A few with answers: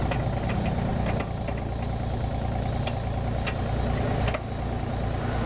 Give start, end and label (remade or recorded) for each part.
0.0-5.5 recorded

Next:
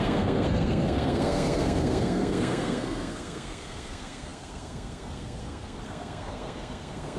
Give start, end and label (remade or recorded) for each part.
0.0-7.2 remade

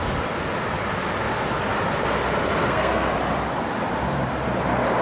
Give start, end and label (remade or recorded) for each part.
0.0-2.6 recorded; 2.6-3.1 remade; 3.1-5.0 recorded

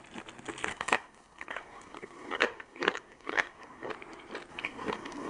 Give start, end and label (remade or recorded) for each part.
0.0-0.7 recorded; 0.7-3.9 remade; 3.9-4.5 recorded; 4.5-5.3 remade

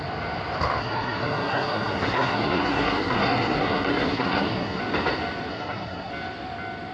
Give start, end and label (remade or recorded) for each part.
0.0-0.8 recorded; 0.8-4.8 remade; 4.8-5.5 recorded; 5.5-6.1 remade; 6.1-6.9 recorded

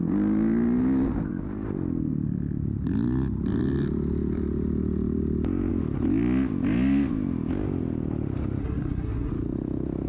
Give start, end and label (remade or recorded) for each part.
0.0-8.6 recorded; 8.6-9.3 remade; 9.3-10.1 recorded